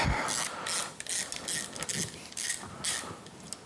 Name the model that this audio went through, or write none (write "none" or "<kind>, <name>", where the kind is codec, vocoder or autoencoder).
none